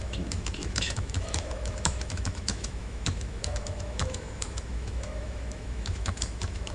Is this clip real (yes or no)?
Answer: no